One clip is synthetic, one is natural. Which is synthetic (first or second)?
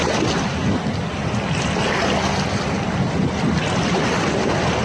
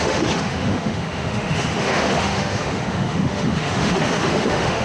second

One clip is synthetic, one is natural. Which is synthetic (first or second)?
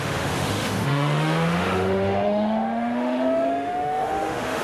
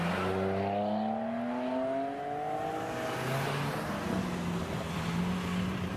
first